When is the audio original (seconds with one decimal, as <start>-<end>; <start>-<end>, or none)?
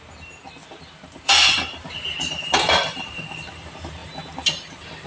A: 0.0-0.6; 2.7-5.1